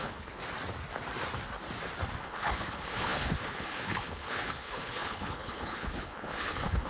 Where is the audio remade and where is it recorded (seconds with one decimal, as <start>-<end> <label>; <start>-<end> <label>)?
0.0-0.4 remade; 0.4-2.2 recorded; 2.2-6.9 remade